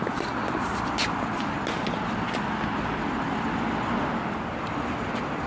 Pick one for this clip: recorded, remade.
recorded